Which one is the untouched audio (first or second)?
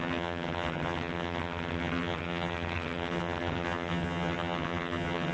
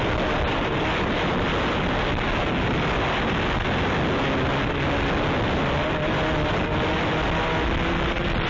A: second